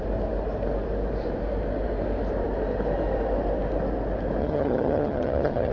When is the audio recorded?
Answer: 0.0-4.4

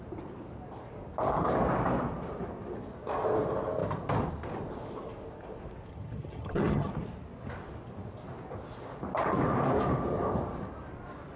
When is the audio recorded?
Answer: 0.0-5.9; 6.9-11.4

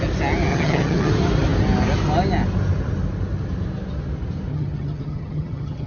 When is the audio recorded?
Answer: 0.0-0.5; 1.1-4.5

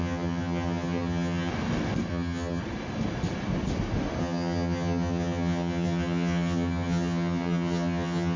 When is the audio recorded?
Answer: 1.5-2.1; 2.6-4.2

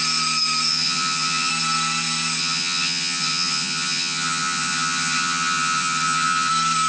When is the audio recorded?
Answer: 0.0-0.7; 1.5-2.4; 6.5-6.9

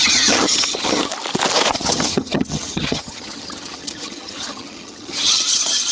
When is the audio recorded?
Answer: 1.1-1.7

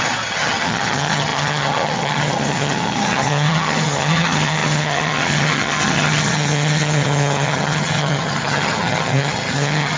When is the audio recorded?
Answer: none